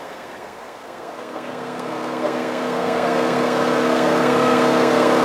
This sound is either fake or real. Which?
fake